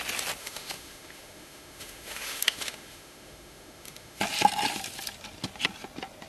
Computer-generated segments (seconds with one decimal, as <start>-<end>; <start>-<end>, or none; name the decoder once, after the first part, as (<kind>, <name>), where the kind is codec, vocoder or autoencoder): 0.4-4.2 (autoencoder, DAC-VAE)